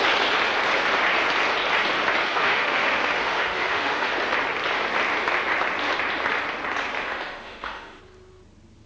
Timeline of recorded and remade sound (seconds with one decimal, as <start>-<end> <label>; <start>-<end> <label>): 0.0-2.2 recorded; 2.2-4.1 remade; 4.1-7.0 recorded; 7.0-8.0 remade; 8.0-8.9 recorded